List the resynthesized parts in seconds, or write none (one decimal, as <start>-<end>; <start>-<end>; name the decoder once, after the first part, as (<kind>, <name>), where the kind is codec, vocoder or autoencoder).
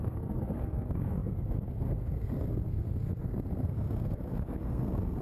0.0-5.2 (codec, SNAC)